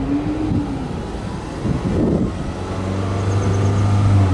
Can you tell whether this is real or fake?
real